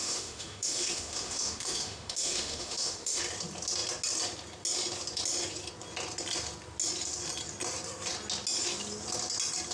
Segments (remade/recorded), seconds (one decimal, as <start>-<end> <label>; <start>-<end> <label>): 0.0-3.2 remade; 3.2-9.7 recorded